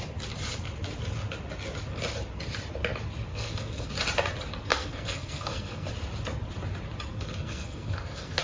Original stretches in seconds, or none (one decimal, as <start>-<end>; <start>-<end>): 0.0-3.3; 3.9-4.7; 5.9-7.1